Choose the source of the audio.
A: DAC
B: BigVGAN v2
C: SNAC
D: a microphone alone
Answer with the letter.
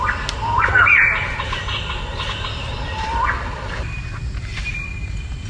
D